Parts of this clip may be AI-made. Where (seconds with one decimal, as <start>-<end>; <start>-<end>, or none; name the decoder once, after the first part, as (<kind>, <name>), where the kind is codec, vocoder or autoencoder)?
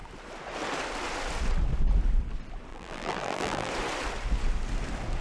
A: 2.7-3.7 (vocoder, BigVGAN v2)